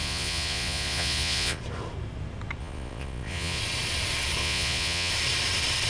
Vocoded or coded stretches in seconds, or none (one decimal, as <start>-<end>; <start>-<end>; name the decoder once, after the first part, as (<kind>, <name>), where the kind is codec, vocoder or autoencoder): 0.0-1.6 (vocoder, Vocos); 2.6-3.6; 4.4-5.1